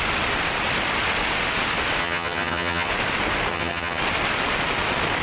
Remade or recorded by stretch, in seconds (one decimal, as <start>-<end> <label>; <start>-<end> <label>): 0.0-2.0 recorded; 2.0-2.9 remade; 2.9-3.5 recorded; 3.5-4.0 remade; 4.0-5.2 recorded